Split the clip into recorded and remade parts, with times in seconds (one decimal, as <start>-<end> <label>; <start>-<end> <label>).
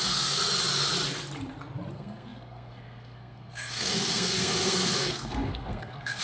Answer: 0.0-0.4 remade; 0.4-1.9 recorded; 1.9-6.2 remade